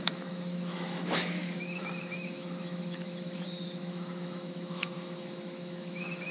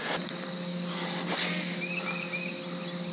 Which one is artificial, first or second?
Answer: first